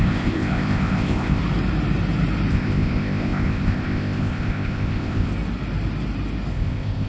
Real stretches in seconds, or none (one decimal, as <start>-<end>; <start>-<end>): 1.4-2.5; 5.3-6.5